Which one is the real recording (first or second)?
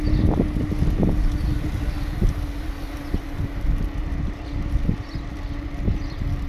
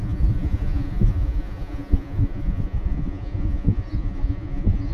first